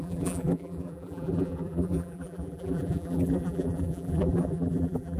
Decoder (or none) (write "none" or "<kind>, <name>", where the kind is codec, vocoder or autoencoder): vocoder, BigVGAN v2